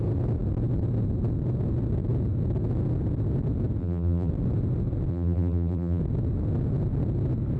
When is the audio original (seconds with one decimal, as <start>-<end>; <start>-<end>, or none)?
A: 0.0-3.8; 4.3-5.1; 6.0-7.6